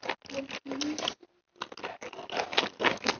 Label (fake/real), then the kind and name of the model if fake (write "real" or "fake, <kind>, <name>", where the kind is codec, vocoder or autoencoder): real